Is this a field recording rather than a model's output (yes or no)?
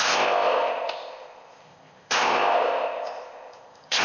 no